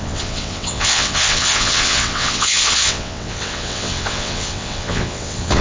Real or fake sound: fake